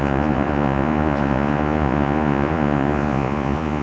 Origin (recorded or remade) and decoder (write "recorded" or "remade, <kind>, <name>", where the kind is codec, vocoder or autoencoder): remade, vocoder, Vocos